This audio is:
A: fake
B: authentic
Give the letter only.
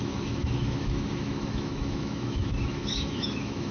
A